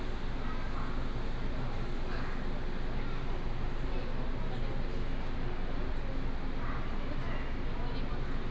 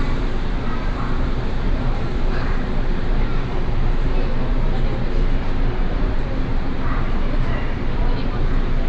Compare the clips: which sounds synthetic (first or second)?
second